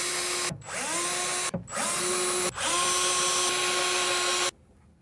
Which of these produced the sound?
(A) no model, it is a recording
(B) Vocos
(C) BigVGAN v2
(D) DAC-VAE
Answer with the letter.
A